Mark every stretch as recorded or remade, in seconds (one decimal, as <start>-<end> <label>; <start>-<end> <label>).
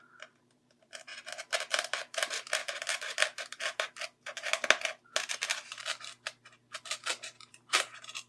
0.0-1.1 remade; 1.1-1.7 recorded; 1.7-2.6 remade; 2.6-7.5 recorded; 7.5-8.3 remade